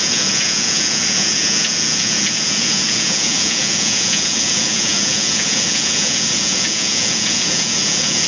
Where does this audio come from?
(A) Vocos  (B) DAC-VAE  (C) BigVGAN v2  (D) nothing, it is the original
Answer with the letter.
A